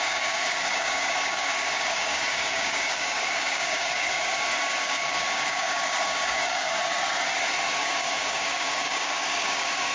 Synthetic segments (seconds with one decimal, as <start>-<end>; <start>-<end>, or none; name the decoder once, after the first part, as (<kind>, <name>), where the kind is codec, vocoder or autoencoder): 0.0-6.8 (codec, DAC); 7.8-9.9